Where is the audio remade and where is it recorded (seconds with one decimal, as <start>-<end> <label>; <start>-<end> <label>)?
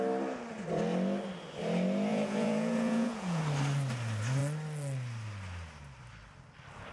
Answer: 0.0-2.1 recorded; 2.1-3.4 remade; 3.4-6.9 recorded